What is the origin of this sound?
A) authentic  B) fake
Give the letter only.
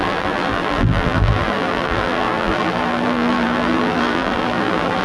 B